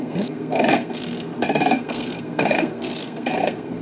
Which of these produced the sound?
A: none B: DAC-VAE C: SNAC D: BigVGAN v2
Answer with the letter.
C